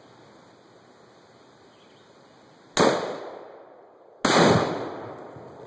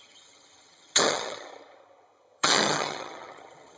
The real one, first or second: first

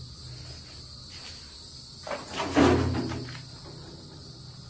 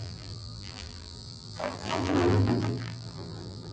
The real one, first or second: first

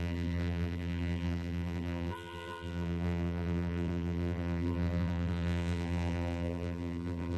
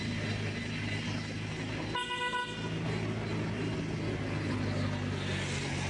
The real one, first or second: second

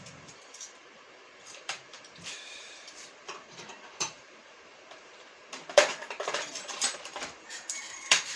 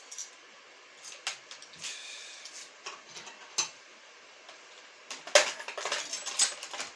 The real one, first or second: second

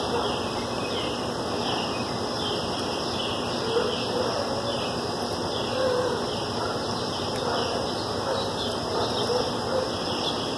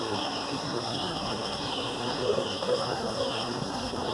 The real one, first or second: first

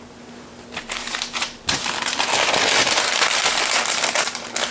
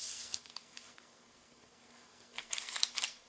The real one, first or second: first